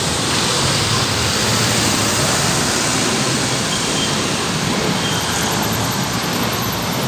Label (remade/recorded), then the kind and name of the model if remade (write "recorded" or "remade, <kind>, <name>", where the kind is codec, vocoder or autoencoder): remade, vocoder, BigVGAN v2